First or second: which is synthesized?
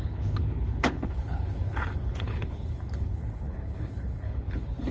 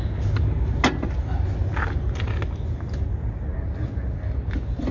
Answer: first